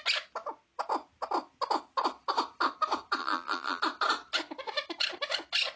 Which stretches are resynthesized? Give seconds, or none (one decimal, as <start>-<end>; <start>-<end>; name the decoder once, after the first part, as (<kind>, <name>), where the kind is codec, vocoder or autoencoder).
3.2-3.8 (vocoder, BigVGAN v2)